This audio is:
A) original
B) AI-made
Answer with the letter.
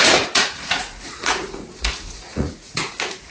B